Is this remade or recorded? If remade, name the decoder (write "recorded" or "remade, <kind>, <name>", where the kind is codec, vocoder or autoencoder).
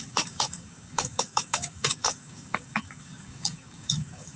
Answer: remade, codec, DAC